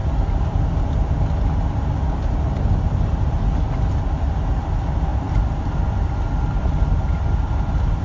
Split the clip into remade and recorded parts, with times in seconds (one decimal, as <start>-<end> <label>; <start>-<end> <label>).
0.0-8.0 recorded